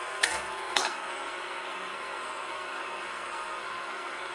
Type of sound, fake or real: fake